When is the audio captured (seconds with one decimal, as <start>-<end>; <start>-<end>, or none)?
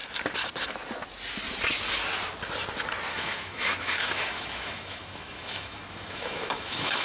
0.0-3.1